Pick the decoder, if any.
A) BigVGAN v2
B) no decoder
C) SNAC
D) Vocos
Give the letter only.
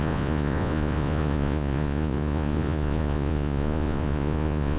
D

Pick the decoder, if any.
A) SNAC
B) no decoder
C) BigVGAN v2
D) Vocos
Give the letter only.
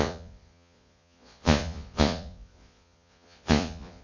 D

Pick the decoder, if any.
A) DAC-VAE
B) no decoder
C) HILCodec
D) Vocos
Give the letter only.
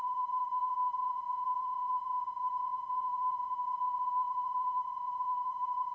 D